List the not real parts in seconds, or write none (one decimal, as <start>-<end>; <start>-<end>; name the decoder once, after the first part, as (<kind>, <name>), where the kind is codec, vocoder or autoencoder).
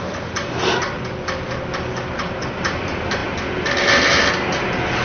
none